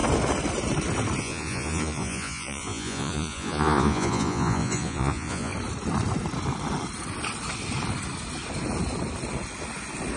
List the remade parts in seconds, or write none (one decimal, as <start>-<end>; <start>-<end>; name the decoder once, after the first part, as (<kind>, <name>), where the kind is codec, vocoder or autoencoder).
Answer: 1.2-5.5 (vocoder, Vocos)